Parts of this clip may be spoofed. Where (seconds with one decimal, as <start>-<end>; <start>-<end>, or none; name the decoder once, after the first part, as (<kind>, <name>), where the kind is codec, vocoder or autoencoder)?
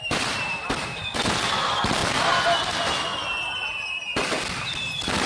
0.0-3.1 (vocoder, BigVGAN v2)